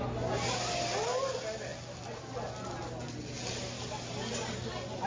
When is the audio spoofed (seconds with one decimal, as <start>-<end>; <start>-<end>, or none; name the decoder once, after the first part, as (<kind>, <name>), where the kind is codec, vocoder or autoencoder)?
none